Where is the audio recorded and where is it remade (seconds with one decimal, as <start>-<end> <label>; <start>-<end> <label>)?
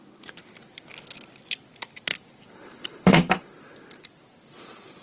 0.0-2.1 recorded; 2.1-3.5 remade; 3.5-5.0 recorded